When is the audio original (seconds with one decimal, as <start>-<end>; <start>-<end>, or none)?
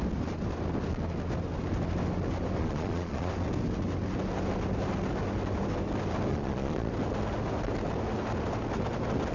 0.0-2.6; 3.3-6.3; 6.9-9.3